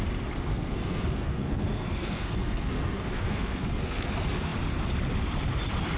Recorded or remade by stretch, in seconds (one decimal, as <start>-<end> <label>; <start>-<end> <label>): 0.0-0.5 recorded; 0.5-4.1 remade; 4.1-6.0 recorded